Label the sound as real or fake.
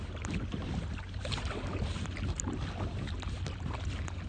real